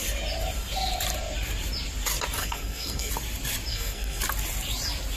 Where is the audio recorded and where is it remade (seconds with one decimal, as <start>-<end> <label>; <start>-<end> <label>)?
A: 0.0-2.4 recorded; 2.4-3.1 remade; 3.1-3.7 recorded; 3.7-4.2 remade; 4.2-5.2 recorded